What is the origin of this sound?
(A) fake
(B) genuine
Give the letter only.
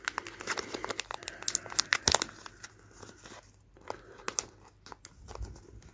B